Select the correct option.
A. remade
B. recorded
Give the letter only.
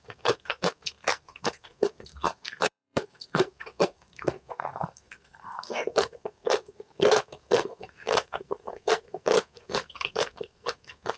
A